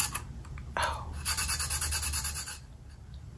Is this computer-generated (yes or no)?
no